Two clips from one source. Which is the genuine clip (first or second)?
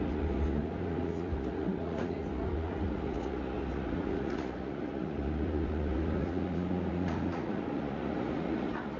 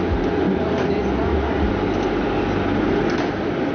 second